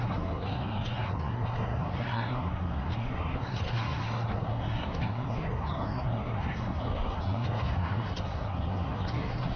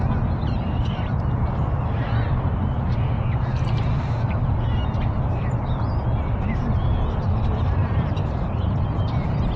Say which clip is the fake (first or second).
first